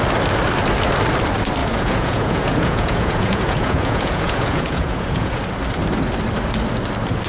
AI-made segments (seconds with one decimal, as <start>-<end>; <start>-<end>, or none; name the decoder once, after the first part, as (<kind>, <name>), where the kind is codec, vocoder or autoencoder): 1.6-5.4 (vocoder, Vocos)